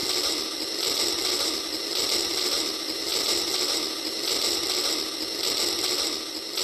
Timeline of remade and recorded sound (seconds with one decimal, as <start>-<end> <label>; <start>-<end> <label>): 0.0-6.6 recorded